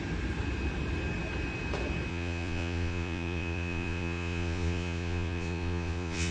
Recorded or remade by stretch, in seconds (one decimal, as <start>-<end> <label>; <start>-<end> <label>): 0.0-2.1 recorded; 2.1-6.3 remade